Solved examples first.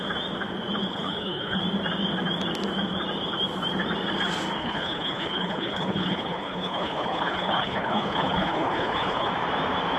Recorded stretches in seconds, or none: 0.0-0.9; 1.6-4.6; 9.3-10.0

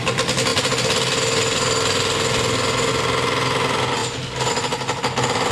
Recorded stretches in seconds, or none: 0.0-5.5

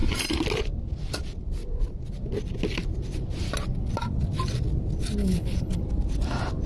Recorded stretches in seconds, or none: 0.0-5.2; 5.8-6.7